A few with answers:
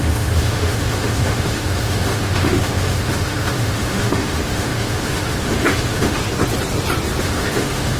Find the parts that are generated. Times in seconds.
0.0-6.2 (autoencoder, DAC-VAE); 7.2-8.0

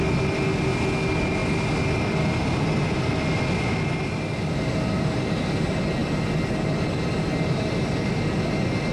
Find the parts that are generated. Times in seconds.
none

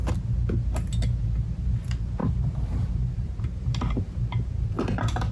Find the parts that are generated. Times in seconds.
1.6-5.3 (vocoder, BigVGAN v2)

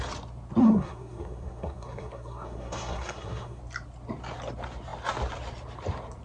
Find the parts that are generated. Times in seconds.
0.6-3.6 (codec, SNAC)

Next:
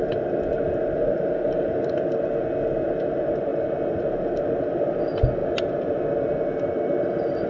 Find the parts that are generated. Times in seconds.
none

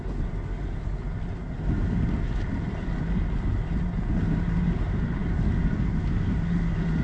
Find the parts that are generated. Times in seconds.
none